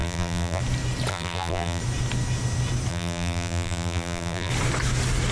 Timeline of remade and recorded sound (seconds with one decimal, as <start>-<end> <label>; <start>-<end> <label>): 0.0-0.6 remade; 0.6-1.1 recorded; 1.1-1.8 remade; 1.8-2.9 recorded; 2.9-4.5 remade; 4.5-5.3 recorded